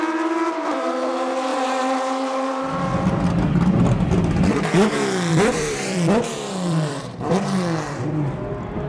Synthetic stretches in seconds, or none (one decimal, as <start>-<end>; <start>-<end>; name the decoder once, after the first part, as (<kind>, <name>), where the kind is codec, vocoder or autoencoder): 5.3-8.5 (vocoder, BigVGAN v2)